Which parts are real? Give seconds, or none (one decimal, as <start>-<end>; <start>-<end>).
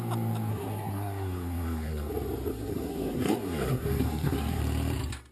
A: 0.0-0.5; 2.1-2.5; 4.6-5.3